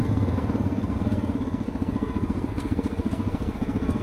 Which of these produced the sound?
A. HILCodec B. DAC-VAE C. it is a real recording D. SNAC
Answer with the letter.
D